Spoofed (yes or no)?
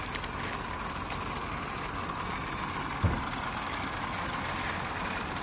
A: no